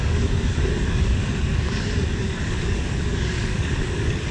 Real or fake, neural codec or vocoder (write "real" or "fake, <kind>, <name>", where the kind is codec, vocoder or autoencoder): fake, codec, DAC